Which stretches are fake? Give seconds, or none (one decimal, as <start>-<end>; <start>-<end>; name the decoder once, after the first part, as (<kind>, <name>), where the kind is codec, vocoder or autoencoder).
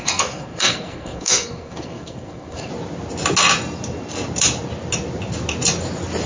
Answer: 0.0-2.7 (codec, SNAC)